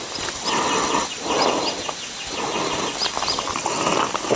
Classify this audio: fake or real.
real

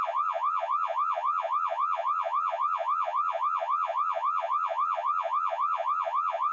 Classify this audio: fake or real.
fake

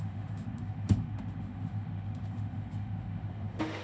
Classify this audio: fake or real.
fake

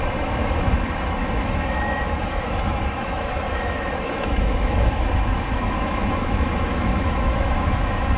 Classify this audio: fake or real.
fake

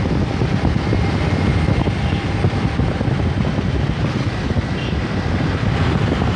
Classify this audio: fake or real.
fake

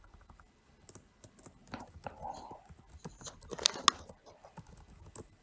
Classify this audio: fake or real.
real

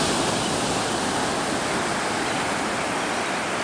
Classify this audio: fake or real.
real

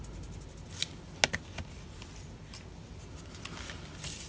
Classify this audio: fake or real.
real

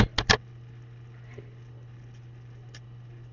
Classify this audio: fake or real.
real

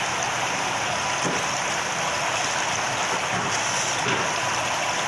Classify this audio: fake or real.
real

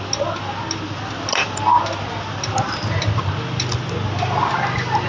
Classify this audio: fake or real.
real